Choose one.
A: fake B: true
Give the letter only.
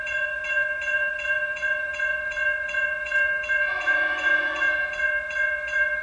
A